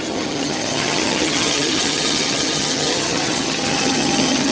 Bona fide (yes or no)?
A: no